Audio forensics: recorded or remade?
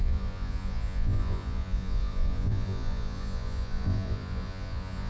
remade